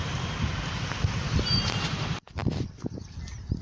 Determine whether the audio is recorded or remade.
recorded